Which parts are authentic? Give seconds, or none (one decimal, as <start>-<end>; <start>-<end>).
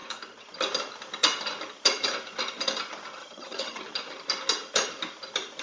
0.0-3.2; 3.8-5.6